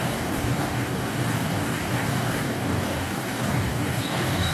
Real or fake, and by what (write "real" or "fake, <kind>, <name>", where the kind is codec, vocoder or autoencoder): fake, codec, DAC